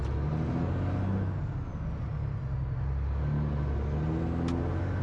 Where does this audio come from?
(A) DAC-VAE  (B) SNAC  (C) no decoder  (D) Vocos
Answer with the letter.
C